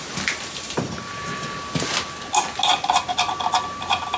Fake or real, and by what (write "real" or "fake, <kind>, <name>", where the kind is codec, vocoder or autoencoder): real